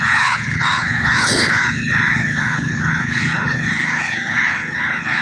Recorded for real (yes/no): no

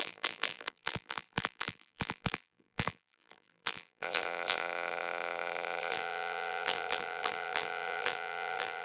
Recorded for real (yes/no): no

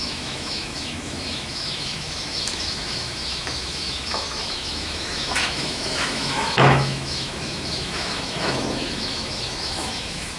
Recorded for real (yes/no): no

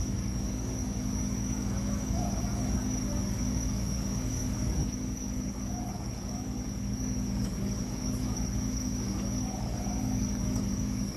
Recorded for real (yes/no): no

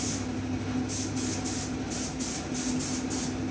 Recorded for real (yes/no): yes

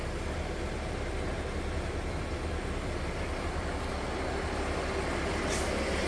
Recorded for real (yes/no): yes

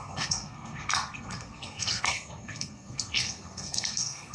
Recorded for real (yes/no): no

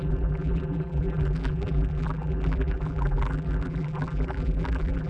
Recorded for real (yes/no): no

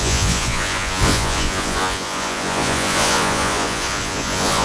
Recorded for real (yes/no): no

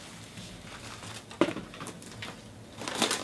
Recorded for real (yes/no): yes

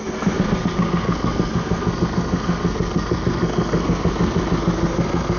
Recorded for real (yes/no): no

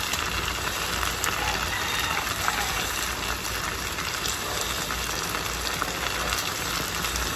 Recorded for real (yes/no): yes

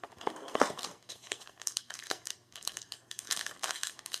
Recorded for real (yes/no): no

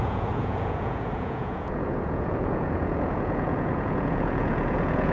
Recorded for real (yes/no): no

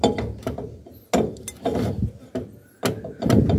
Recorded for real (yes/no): yes